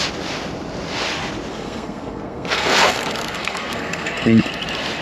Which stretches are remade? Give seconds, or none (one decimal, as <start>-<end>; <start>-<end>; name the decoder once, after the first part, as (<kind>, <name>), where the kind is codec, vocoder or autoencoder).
1.5-4.5 (codec, SNAC)